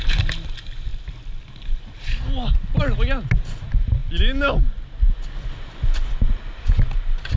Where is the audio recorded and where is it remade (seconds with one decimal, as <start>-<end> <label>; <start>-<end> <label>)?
0.0-7.4 recorded